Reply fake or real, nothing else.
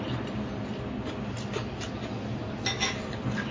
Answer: real